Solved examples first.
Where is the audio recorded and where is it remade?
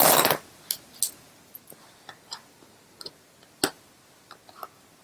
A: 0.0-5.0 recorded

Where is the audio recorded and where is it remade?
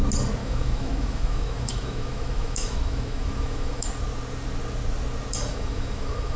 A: 0.0-0.4 recorded; 0.4-3.9 remade; 3.9-5.5 recorded; 5.5-6.4 remade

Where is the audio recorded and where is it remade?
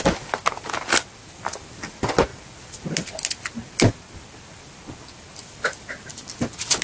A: 0.0-6.8 recorded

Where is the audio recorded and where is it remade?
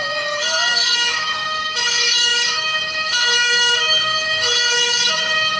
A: 0.0-5.6 remade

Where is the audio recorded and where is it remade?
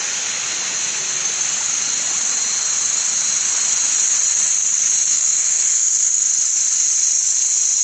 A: 0.0-5.1 recorded; 5.1-6.1 remade; 6.1-7.8 recorded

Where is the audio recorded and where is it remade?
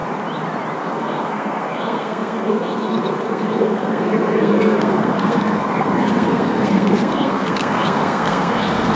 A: 0.0-0.8 recorded; 0.8-9.0 remade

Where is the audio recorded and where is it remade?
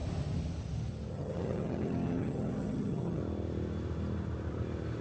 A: 0.0-1.1 recorded; 1.1-3.2 remade; 3.2-5.0 recorded